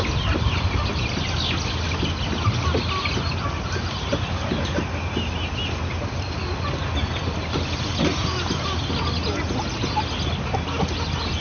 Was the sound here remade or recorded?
recorded